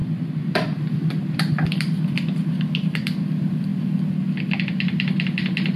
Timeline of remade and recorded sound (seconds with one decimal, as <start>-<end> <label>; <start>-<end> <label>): 0.0-3.7 remade; 3.7-4.4 recorded; 4.4-5.8 remade